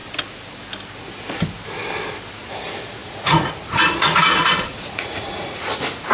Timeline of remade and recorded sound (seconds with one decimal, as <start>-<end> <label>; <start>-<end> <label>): 0.0-2.3 recorded; 2.3-6.1 remade